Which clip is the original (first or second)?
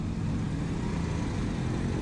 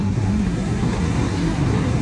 first